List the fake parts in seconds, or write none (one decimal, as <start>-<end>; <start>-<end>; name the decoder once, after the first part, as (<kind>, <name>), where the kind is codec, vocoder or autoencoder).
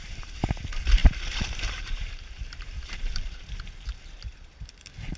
1.0-3.4 (vocoder, BigVGAN v2)